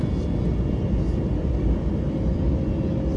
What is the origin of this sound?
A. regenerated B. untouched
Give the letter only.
B